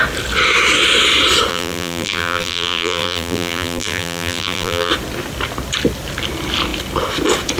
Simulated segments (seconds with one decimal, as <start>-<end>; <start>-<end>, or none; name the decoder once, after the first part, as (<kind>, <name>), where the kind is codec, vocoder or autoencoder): 1.5-4.9 (vocoder, BigVGAN v2)